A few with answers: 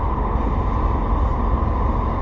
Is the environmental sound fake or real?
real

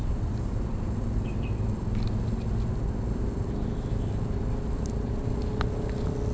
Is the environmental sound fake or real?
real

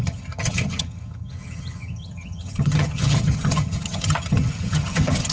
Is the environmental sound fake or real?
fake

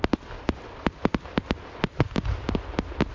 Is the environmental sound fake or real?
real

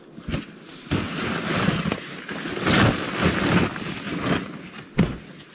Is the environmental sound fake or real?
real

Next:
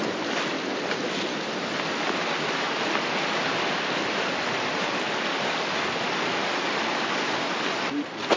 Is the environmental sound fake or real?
real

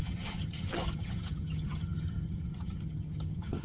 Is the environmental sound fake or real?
fake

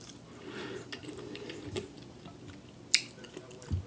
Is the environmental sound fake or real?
real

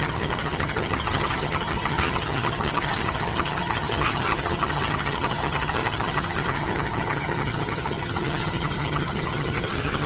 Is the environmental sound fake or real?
fake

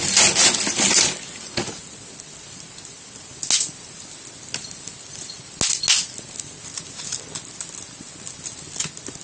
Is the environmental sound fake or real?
real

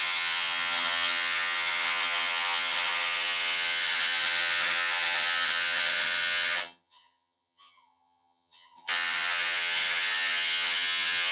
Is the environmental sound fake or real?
fake